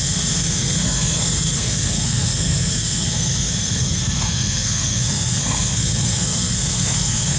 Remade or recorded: remade